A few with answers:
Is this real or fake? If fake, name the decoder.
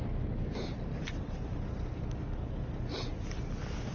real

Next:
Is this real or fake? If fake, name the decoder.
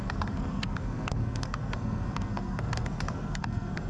fake, codec, SNAC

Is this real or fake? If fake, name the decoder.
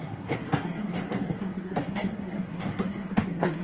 fake, codec, SNAC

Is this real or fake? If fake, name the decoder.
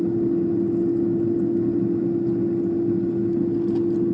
real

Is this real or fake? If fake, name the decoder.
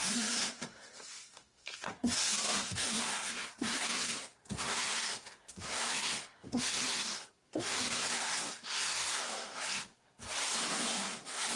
fake, codec, SNAC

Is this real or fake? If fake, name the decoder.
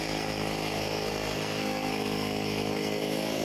fake, codec, SNAC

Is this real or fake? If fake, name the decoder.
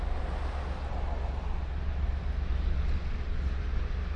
real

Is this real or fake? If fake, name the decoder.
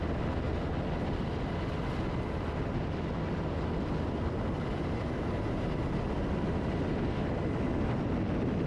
real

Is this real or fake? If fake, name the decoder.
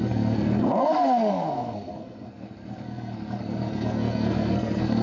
fake, codec, SNAC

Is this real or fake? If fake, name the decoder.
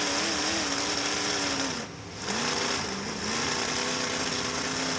real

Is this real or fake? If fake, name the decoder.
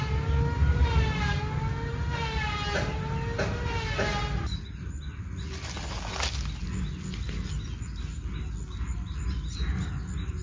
real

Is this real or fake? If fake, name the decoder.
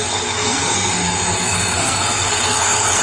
fake, codec, SNAC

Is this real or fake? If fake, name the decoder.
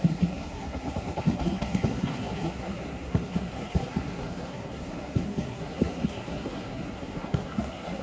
fake, codec, SNAC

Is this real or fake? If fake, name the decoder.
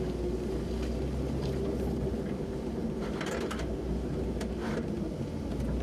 real